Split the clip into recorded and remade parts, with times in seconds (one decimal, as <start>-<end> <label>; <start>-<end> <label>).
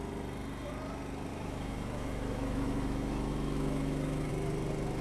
0.0-1.3 recorded; 1.3-4.3 remade; 4.3-5.0 recorded